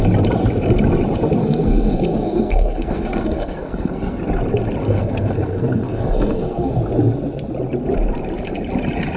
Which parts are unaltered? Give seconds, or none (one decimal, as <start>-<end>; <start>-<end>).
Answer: 0.0-1.4; 4.2-4.8; 6.8-9.2